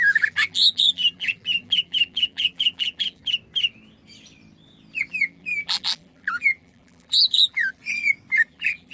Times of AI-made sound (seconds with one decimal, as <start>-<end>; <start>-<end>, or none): 0.0-3.2; 5.1-7.8; 8.4-8.9